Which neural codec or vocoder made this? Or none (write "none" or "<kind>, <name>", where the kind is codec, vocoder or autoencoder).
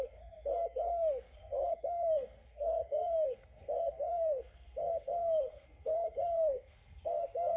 codec, SNAC